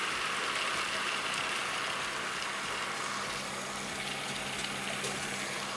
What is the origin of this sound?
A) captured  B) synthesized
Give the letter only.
A